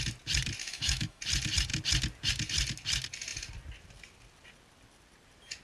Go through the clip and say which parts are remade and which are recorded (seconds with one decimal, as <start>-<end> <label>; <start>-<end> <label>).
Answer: 0.0-0.6 recorded; 0.6-1.2 remade; 1.2-5.6 recorded